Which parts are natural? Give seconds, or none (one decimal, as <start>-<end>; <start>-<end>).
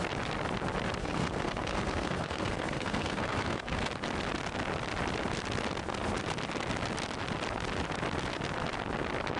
0.0-1.0; 3.9-9.4